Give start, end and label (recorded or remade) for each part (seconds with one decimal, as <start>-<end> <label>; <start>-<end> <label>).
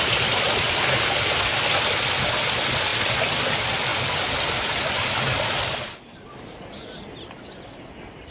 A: 0.0-8.3 recorded